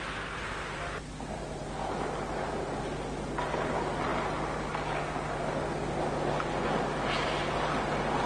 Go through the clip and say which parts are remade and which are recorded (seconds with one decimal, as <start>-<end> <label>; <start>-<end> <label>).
0.0-8.3 recorded